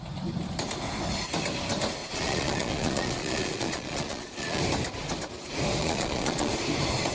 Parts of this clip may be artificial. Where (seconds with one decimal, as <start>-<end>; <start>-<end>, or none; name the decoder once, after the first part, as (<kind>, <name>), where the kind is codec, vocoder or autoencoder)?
2.0-4.6 (vocoder, Vocos); 5.8-6.5